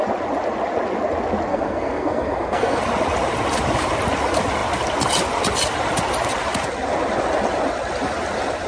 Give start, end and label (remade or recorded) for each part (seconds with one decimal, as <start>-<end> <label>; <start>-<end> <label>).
0.0-1.5 recorded; 1.5-2.8 remade; 2.8-8.7 recorded

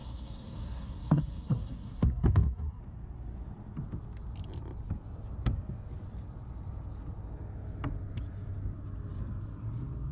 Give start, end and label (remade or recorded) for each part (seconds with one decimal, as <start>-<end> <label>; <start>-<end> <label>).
0.0-2.8 remade; 2.8-10.1 recorded

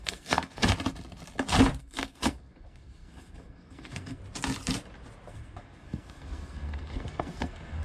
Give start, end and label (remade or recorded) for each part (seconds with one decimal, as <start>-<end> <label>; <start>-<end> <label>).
0.0-0.6 remade; 0.6-1.8 recorded; 1.8-4.2 remade; 4.2-5.3 recorded; 5.3-7.8 remade

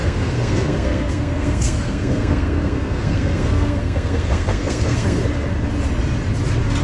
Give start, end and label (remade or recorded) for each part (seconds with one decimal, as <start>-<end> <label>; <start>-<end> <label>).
0.0-5.2 remade; 5.2-6.8 recorded

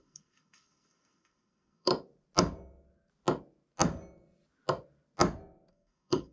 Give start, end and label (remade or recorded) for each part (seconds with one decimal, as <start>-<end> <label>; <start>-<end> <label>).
0.0-1.9 remade; 1.9-5.7 recorded; 5.7-6.3 remade

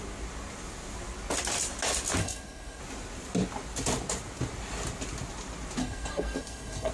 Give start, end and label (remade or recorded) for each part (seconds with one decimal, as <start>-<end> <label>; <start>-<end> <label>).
0.0-2.2 recorded; 2.2-2.8 remade; 2.8-5.8 recorded; 5.8-6.9 remade

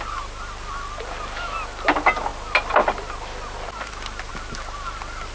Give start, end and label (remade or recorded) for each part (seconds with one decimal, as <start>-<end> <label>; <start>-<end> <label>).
0.0-5.3 recorded

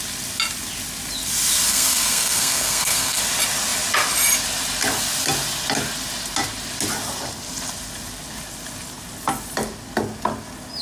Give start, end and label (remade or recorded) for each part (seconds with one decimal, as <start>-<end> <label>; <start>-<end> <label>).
0.0-1.7 recorded; 1.7-3.2 remade; 3.2-10.8 recorded